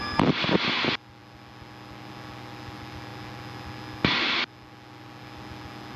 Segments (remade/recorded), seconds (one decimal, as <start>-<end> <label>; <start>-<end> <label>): 0.0-6.0 recorded